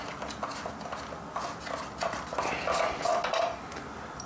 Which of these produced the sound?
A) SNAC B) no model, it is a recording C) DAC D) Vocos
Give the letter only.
B